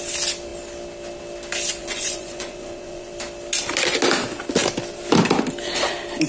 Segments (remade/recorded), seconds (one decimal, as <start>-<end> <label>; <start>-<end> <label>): 0.0-1.8 recorded; 1.8-3.1 remade; 3.1-6.3 recorded